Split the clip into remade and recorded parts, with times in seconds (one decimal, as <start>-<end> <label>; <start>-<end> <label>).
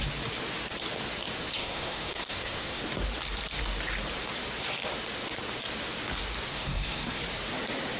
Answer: 0.0-1.5 recorded; 1.5-2.8 remade; 2.8-6.5 recorded; 6.5-7.2 remade; 7.2-8.0 recorded